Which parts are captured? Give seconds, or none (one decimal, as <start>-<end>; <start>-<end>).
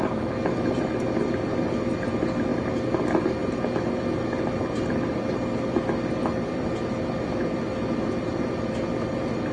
0.0-9.5